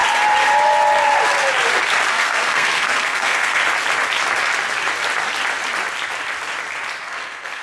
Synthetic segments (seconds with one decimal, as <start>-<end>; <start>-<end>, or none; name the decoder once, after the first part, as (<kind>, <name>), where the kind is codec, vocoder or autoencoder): 2.1-3.6 (codec, SNAC); 7.0-7.6